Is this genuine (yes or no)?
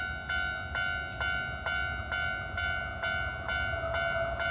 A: yes